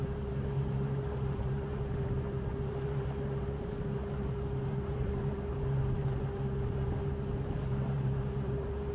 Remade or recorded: remade